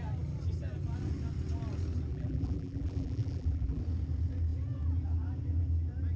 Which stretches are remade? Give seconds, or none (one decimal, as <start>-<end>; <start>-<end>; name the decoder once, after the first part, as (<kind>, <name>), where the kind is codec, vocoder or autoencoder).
2.1-3.8 (vocoder, BigVGAN v2)